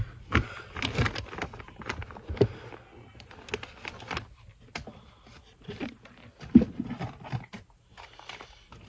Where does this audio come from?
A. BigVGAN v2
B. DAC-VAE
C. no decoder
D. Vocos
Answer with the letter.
C